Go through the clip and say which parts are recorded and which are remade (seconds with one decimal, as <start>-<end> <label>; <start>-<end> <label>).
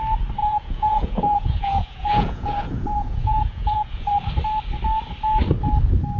0.0-0.4 recorded; 0.4-4.1 remade; 4.1-6.2 recorded